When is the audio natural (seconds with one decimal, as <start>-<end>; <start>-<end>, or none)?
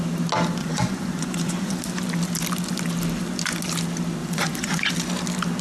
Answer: 0.0-0.6; 1.8-4.2; 4.9-5.6